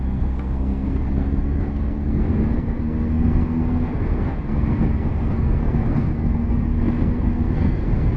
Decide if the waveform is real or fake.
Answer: fake